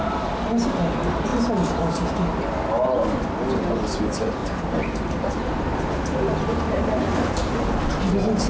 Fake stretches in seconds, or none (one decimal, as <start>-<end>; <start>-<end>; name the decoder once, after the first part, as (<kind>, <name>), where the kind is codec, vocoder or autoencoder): 4.4-7.0 (vocoder, BigVGAN v2)